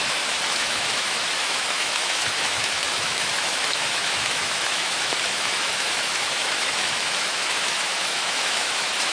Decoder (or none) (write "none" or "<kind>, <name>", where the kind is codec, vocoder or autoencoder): autoencoder, DAC-VAE